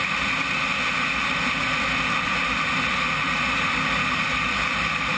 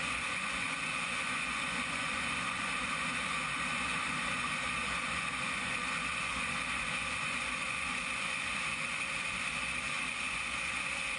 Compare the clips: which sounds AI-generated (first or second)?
second